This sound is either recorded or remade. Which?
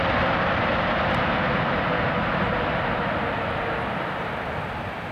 recorded